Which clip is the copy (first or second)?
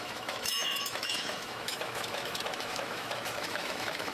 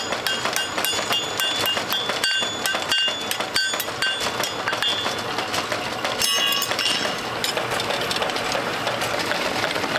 first